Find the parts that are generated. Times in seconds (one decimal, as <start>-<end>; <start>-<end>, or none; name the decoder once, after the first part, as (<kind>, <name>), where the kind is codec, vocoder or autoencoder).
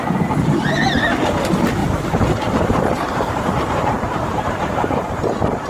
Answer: 1.8-5.2 (vocoder, BigVGAN v2)